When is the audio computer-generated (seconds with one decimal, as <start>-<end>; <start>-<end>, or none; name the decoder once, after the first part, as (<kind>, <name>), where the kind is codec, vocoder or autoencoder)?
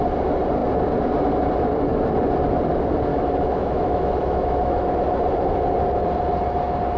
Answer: 3.1-4.9 (autoencoder, DAC-VAE)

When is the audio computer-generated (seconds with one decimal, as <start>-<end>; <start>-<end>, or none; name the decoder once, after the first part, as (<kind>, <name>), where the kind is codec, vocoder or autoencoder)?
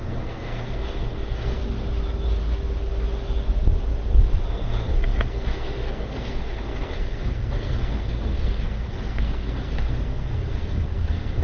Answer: 0.0-1.6 (codec, SNAC); 4.5-11.4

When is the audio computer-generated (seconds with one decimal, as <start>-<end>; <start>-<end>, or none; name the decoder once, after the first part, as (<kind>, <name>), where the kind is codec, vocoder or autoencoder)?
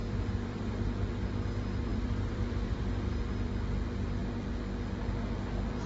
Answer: 0.0-0.7 (vocoder, BigVGAN v2); 1.9-2.9